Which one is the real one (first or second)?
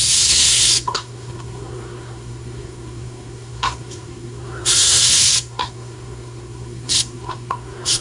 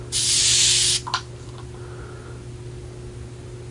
second